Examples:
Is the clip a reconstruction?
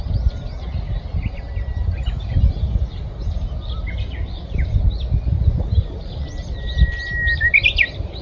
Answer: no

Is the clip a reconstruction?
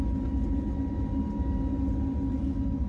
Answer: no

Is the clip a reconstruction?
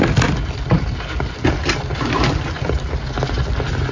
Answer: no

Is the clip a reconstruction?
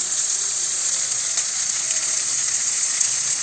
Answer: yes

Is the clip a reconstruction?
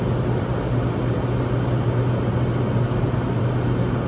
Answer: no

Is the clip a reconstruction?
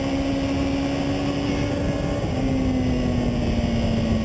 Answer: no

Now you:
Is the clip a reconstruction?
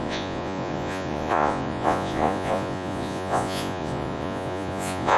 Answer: yes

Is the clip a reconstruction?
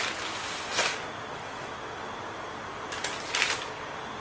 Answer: no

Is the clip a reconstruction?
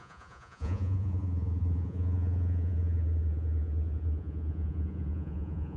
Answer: yes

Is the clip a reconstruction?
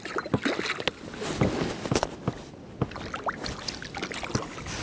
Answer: no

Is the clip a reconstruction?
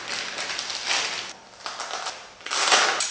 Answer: no